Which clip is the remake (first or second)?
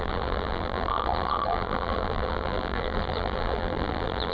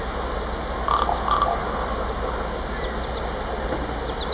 first